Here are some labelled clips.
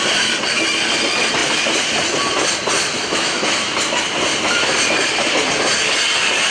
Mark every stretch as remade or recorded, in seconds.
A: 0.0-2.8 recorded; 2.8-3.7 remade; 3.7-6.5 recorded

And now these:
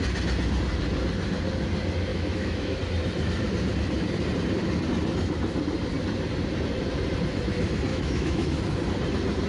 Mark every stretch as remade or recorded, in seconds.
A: 0.0-2.1 recorded; 2.1-2.8 remade; 2.8-7.9 recorded; 7.9-8.6 remade; 8.6-9.5 recorded